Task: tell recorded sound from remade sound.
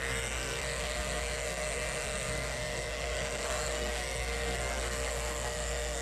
remade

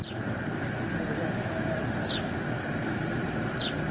recorded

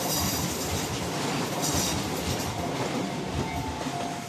recorded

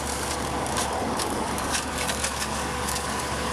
remade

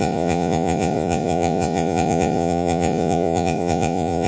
remade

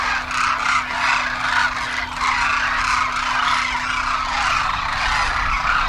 recorded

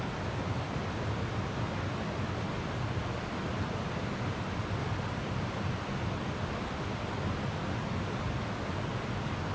recorded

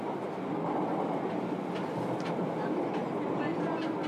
recorded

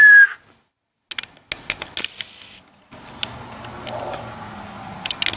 recorded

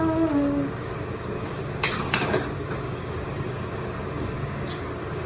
remade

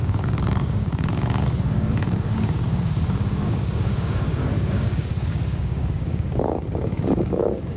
remade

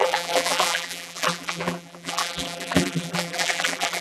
remade